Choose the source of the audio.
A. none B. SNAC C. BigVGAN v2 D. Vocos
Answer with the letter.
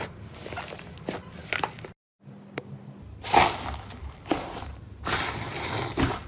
A